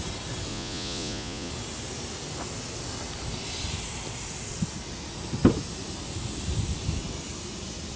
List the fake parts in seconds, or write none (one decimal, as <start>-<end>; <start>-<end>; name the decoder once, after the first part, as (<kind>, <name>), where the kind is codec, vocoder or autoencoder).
0.5-1.5 (vocoder, Vocos)

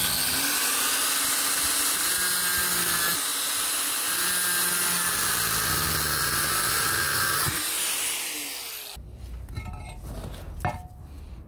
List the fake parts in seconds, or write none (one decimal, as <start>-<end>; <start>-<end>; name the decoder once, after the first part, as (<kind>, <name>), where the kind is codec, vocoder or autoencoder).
none

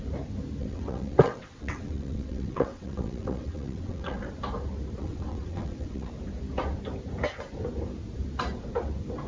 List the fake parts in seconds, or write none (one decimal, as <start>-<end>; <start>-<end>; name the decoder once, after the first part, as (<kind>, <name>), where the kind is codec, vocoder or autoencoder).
0.6-4.3 (vocoder, WaveNeXt); 5.0-6.1

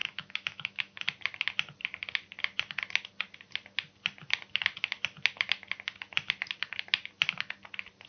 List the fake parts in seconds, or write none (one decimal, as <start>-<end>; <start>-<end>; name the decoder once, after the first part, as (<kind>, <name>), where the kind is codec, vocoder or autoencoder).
0.0-1.0 (autoencoder, DAC-VAE)